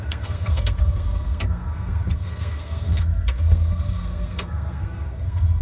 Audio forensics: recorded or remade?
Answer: remade